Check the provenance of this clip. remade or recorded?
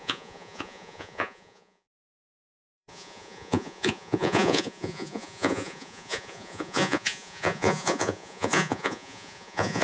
remade